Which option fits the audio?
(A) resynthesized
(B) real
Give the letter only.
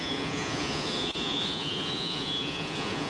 A